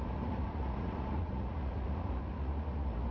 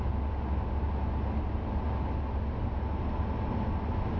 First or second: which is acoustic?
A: second